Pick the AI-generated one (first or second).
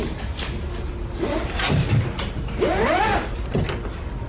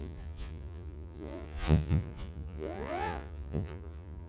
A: second